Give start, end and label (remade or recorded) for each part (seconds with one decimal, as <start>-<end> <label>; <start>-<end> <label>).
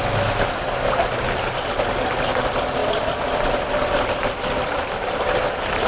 0.0-5.9 recorded